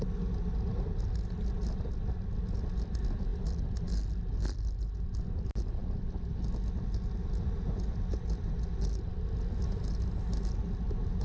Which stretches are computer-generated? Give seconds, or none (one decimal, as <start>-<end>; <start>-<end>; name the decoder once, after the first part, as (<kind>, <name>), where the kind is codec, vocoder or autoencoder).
none